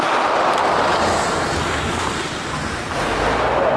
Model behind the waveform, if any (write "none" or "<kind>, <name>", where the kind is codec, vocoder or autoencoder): none